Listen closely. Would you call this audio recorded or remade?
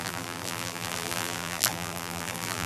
remade